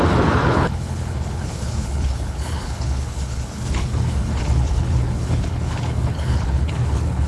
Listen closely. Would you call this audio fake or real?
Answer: fake